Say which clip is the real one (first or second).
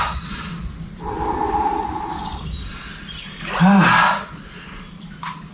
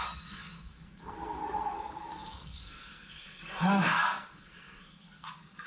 first